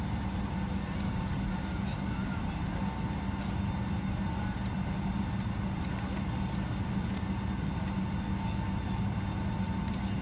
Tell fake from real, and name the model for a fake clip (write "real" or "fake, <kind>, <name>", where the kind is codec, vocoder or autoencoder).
real